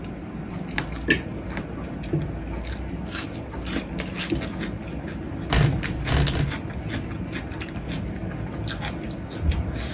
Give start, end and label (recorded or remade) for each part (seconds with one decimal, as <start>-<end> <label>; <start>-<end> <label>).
0.0-9.9 recorded

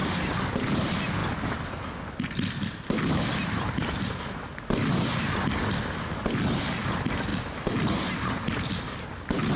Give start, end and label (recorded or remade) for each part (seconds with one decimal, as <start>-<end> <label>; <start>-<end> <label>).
0.0-0.7 remade; 0.7-3.4 recorded; 3.4-4.3 remade; 4.3-9.6 recorded

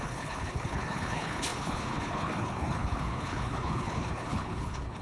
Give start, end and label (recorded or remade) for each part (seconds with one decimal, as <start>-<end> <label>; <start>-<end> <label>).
0.0-5.0 remade